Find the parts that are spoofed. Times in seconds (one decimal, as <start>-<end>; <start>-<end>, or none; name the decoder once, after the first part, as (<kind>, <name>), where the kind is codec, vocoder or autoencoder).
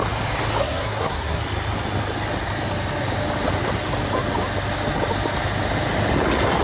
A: 0.6-1.4 (codec, SNAC)